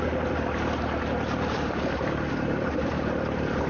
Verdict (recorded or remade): recorded